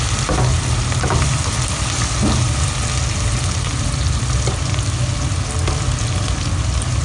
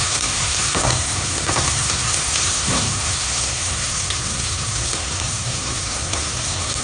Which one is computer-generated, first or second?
second